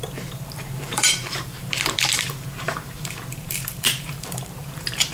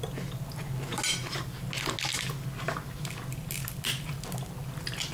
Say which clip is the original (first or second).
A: second